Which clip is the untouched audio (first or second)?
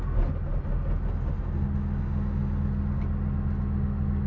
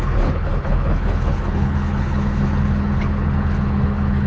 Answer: first